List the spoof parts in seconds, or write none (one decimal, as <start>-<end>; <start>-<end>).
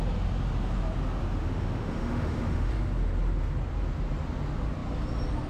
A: 1.4-2.7